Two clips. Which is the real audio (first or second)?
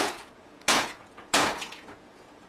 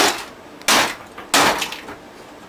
second